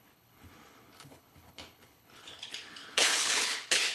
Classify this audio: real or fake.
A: fake